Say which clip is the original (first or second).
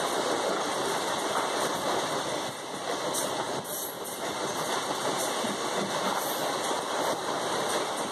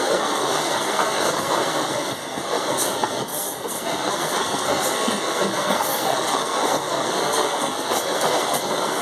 first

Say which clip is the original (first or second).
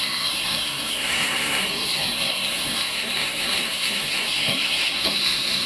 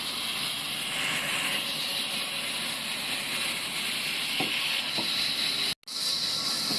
second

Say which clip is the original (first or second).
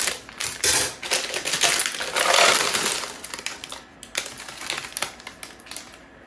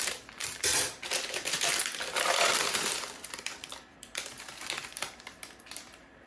first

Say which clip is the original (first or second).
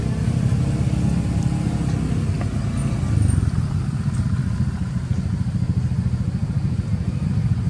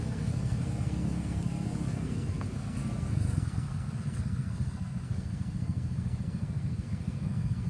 first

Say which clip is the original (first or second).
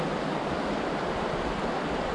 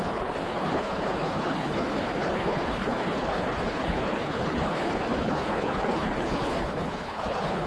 first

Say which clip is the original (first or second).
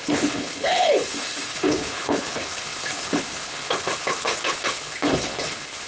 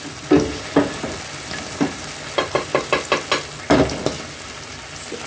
second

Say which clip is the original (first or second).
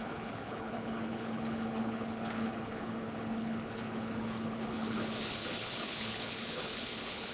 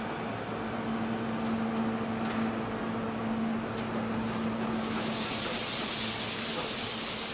second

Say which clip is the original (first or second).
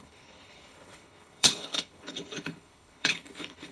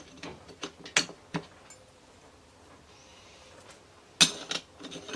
second